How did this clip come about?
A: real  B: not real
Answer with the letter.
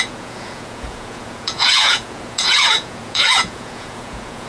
B